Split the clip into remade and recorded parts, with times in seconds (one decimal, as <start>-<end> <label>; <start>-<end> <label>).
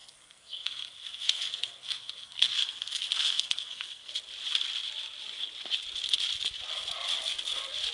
0.0-4.1 remade; 4.1-7.9 recorded